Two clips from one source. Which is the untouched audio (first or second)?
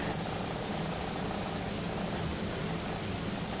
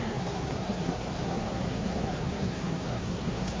first